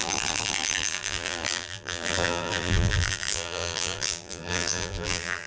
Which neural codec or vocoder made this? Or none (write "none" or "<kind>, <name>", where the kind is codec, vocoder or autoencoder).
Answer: vocoder, BigVGAN v2